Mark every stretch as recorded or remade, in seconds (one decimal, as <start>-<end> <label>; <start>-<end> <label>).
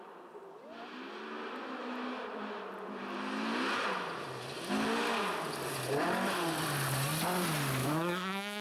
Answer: 0.0-7.8 recorded; 7.8-8.6 remade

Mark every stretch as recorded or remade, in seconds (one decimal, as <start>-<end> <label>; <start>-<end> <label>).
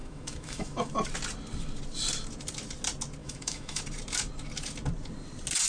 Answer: 0.0-0.9 remade; 0.9-3.2 recorded; 3.2-3.8 remade; 3.8-5.7 recorded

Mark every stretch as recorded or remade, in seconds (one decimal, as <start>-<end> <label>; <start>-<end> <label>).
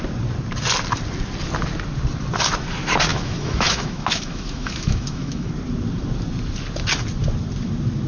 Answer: 0.0-3.1 recorded; 3.1-5.5 remade; 5.5-8.1 recorded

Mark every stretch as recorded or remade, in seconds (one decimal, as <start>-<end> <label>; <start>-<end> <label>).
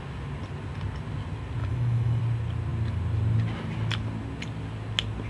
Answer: 0.0-1.6 recorded; 1.6-2.2 remade; 2.2-5.3 recorded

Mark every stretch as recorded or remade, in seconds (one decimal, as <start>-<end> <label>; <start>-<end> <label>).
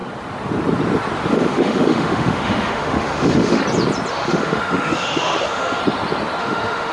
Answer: 0.0-1.3 recorded; 1.3-3.6 remade; 3.6-4.1 recorded; 4.1-5.8 remade; 5.8-6.4 recorded; 6.4-6.9 remade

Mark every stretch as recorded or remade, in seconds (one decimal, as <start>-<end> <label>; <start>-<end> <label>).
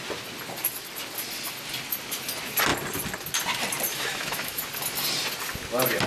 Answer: 0.0-3.9 recorded; 3.9-4.6 remade; 4.6-6.1 recorded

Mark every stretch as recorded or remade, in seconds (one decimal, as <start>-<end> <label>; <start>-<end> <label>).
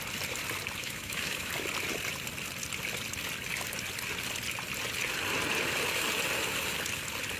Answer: 0.0-0.8 recorded; 0.8-1.5 remade; 1.5-7.4 recorded